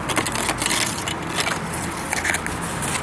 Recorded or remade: recorded